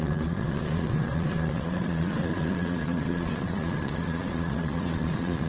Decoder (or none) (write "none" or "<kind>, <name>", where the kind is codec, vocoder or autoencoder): vocoder, Vocos